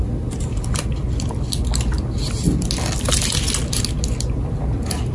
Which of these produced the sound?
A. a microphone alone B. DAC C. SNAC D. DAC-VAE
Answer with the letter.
A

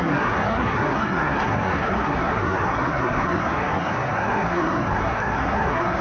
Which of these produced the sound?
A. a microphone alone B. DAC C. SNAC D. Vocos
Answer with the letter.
C